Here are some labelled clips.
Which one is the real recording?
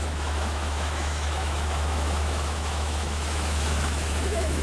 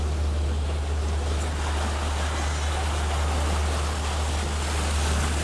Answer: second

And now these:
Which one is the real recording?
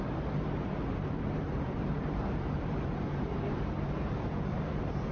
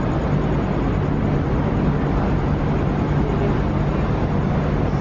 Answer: second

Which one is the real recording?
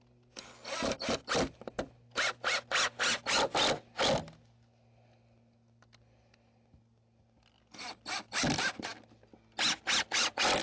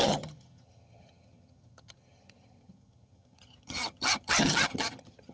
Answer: first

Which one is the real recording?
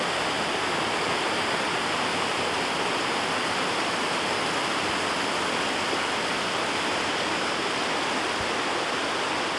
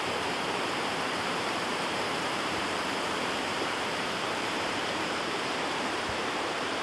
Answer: first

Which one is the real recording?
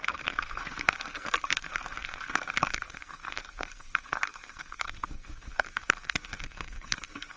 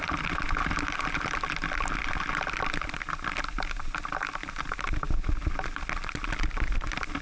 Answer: second